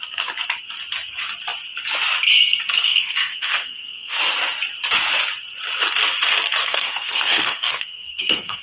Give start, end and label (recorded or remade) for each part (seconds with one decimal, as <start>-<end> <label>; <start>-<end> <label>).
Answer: 0.0-2.8 recorded; 2.8-4.2 remade; 4.2-6.6 recorded; 6.6-8.6 remade